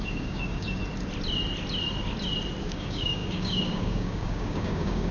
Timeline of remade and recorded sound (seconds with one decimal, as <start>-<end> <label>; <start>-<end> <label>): 0.0-0.8 remade; 0.8-2.6 recorded; 2.6-5.1 remade